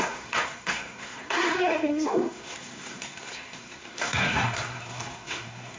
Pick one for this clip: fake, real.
fake